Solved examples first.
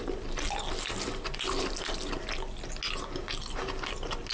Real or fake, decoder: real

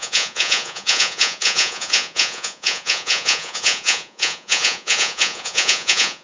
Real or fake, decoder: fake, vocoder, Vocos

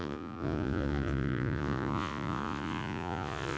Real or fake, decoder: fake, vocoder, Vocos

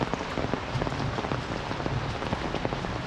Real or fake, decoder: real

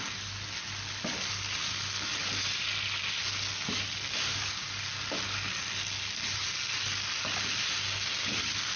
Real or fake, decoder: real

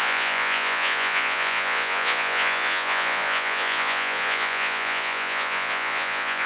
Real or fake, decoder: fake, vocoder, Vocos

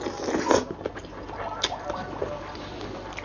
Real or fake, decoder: real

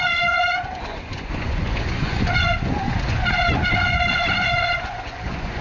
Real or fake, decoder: fake, vocoder, Vocos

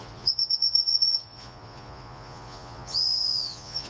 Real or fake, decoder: fake, vocoder, Vocos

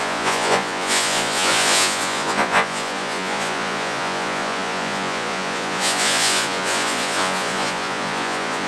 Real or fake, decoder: fake, vocoder, Vocos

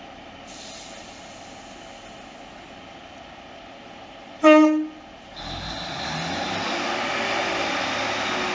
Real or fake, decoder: real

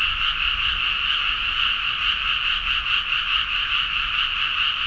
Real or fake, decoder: real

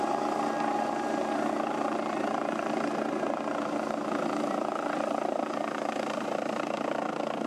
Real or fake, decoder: real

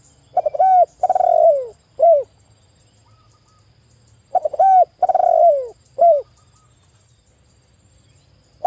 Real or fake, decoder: real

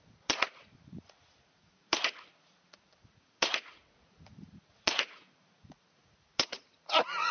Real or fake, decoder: fake, vocoder, Vocos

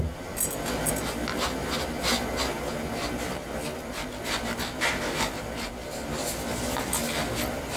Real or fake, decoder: real